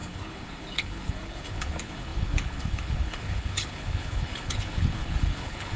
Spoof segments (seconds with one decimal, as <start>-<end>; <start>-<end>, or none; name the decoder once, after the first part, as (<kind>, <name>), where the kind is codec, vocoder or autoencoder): 0.0-5.8 (codec, HILCodec)